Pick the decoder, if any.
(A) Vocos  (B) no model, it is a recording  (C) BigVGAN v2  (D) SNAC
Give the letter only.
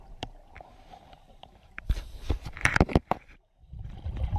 C